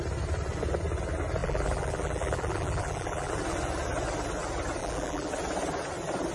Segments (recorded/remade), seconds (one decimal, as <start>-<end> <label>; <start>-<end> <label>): 0.0-1.4 recorded; 1.4-3.3 remade; 3.3-4.8 recorded; 4.8-5.3 remade; 5.3-6.3 recorded